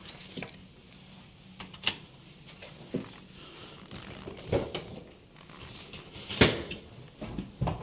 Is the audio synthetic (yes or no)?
no